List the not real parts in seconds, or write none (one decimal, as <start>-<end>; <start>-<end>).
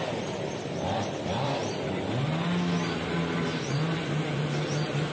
none